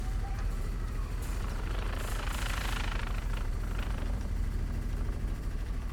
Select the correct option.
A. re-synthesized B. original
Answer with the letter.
A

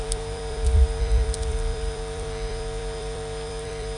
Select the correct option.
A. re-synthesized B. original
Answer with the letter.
A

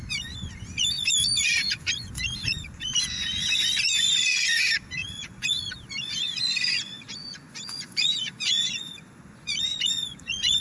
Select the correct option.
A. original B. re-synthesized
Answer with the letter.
B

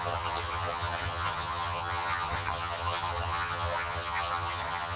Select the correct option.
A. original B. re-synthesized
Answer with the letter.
B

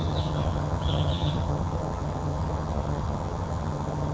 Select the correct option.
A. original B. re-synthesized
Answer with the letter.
B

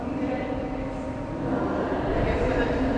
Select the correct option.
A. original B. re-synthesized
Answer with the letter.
B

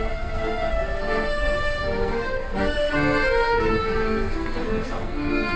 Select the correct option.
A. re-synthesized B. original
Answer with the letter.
A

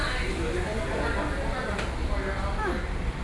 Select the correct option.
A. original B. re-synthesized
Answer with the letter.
A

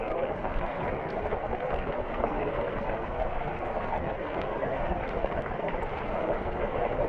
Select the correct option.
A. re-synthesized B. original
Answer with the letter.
A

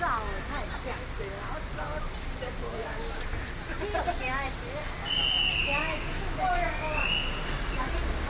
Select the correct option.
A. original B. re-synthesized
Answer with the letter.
A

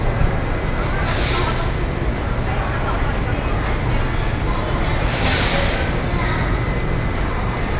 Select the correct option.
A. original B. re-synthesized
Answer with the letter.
A